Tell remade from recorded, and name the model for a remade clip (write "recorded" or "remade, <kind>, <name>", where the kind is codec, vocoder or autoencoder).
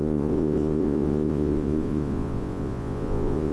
remade, vocoder, Vocos